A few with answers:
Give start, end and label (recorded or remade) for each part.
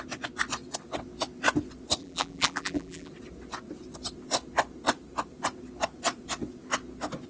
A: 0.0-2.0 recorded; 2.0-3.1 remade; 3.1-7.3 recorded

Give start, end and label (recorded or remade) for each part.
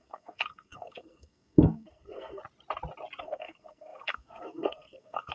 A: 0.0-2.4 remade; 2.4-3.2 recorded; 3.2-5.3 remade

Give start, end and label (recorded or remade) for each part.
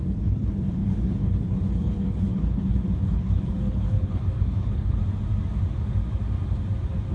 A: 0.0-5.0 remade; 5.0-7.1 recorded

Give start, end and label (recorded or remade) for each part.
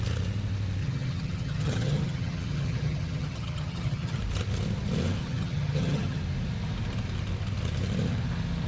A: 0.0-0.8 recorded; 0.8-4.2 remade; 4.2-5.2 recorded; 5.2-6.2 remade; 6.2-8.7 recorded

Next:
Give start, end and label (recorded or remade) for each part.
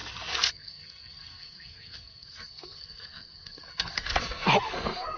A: 0.0-5.2 remade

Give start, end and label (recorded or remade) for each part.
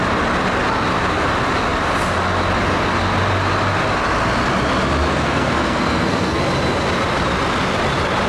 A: 0.0-5.1 recorded; 5.1-6.4 remade; 6.4-8.3 recorded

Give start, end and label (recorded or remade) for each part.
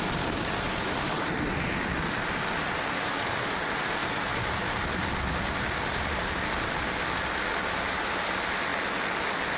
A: 0.0-9.6 recorded